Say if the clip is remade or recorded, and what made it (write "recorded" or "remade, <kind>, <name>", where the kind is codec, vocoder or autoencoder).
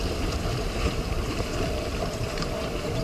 recorded